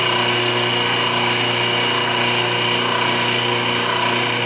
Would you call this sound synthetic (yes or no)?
no